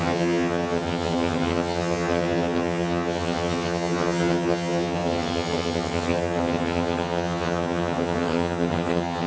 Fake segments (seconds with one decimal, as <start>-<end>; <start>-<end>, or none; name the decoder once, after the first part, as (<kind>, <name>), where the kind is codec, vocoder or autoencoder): 0.0-9.3 (vocoder, HiFi-GAN)